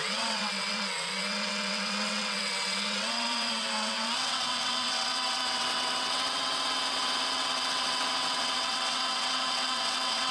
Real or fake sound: fake